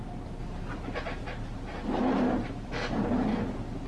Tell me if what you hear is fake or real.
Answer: real